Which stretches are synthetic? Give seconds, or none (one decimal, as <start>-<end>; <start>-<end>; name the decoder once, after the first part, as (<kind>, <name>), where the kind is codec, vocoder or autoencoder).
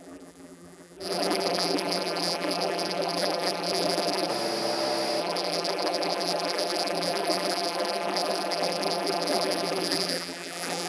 0.0-4.3 (vocoder, BigVGAN v2); 5.2-10.9